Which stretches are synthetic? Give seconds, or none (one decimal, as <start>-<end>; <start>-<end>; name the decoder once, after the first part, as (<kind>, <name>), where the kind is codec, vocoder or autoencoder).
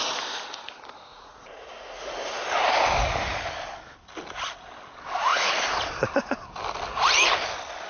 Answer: 1.1-2.7 (vocoder, Vocos)